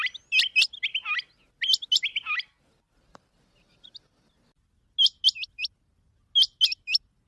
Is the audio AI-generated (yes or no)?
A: no